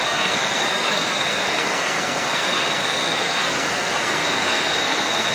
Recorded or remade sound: remade